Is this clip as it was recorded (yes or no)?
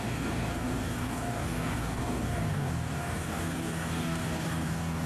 no